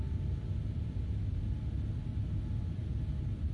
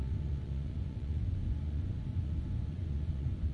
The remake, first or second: second